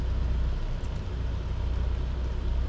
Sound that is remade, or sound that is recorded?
recorded